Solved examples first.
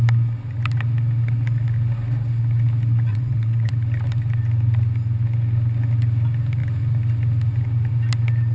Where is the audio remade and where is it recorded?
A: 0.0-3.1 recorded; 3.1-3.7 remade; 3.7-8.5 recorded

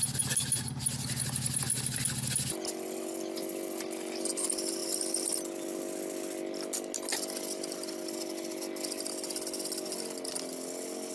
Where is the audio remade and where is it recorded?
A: 0.0-11.1 recorded